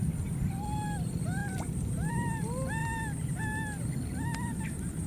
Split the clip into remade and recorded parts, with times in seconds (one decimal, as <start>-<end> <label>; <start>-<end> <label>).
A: 0.0-5.1 recorded